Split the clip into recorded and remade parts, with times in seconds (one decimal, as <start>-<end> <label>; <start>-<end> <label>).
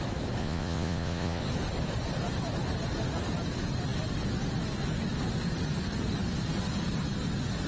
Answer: 0.0-0.4 recorded; 0.4-1.4 remade; 1.4-7.7 recorded